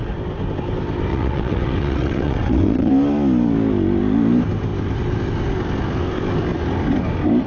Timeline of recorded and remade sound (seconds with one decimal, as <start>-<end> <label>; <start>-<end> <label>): 0.0-1.1 recorded; 1.1-2.9 remade; 2.9-7.5 recorded